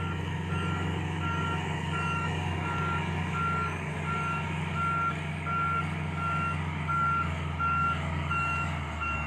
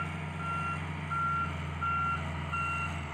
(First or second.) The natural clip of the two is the second